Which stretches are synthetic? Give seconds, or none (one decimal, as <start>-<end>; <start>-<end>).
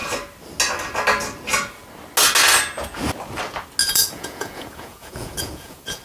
3.8-6.0